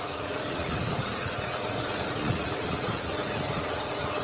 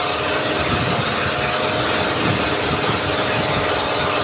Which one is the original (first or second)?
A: second